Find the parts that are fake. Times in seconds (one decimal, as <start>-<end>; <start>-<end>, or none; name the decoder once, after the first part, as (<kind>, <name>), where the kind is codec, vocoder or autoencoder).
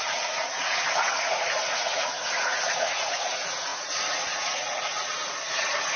0.0-6.0 (vocoder, Vocos)